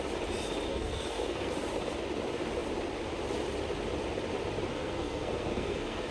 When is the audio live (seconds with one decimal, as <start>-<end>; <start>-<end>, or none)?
0.0-0.7; 1.5-4.7